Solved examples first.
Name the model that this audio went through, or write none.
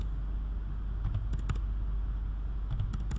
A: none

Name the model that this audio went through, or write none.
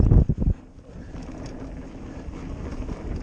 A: none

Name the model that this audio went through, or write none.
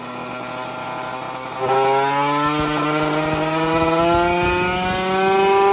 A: none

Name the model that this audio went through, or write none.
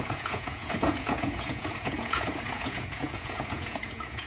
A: vocoder, Vocos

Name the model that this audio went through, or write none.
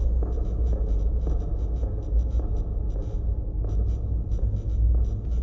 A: none